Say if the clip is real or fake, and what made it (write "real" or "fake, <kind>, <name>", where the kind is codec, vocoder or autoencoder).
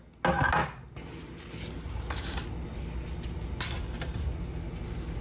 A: real